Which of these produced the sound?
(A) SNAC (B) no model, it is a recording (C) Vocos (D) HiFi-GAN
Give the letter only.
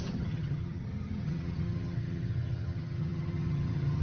D